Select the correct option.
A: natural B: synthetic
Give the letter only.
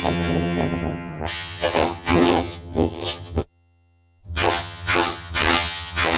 B